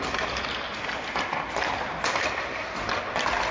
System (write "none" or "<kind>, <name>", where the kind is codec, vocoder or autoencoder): none